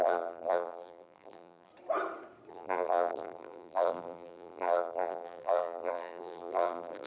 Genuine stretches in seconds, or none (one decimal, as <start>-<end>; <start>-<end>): 1.7-2.5